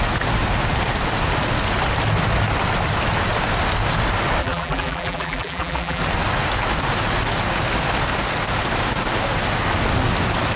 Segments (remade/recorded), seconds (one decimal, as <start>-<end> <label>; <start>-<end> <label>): 0.0-4.4 recorded; 4.4-6.0 remade; 6.0-10.6 recorded